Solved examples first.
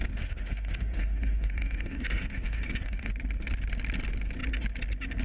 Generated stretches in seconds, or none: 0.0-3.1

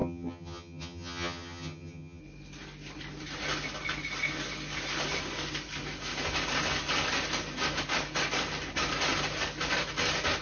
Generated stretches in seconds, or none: 0.0-2.2

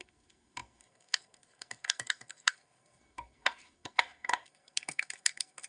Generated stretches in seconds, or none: 0.0-5.7

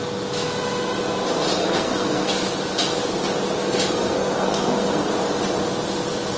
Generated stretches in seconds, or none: 1.6-2.3; 3.6-5.1

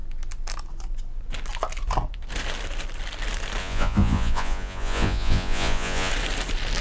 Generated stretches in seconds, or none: 3.6-6.1

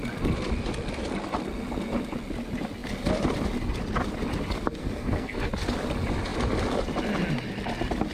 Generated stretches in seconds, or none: 4.8-5.5

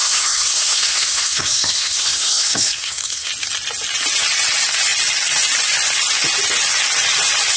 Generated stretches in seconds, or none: 0.0-3.3

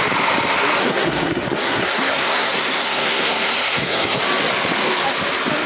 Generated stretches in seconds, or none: 0.8-4.2